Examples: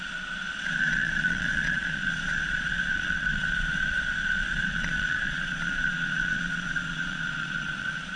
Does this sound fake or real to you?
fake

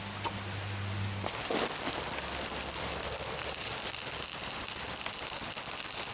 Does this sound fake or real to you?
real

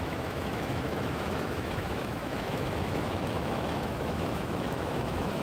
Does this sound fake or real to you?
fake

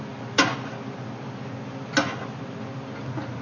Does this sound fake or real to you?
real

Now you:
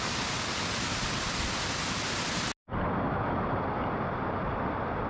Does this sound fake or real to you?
real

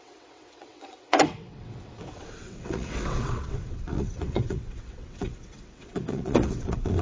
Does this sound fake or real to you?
fake